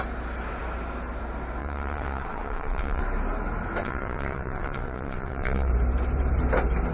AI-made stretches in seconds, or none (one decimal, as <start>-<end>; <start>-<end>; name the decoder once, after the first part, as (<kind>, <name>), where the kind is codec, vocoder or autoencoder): 1.6-3.0 (vocoder, WaveNeXt); 3.8-5.7